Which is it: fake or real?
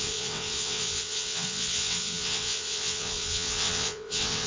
fake